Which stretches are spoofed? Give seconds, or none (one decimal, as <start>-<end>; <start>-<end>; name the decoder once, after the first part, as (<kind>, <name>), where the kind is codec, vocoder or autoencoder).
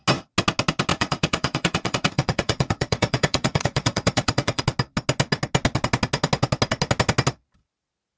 0.9-4.6 (vocoder, Vocos)